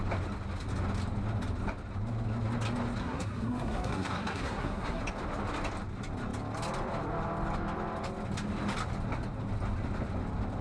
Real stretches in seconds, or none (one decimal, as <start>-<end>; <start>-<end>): 0.0-3.0; 5.0-10.6